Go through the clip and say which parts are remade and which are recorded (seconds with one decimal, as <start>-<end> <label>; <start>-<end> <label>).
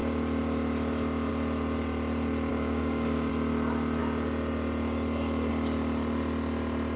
0.0-2.5 recorded; 2.5-3.3 remade; 3.3-7.0 recorded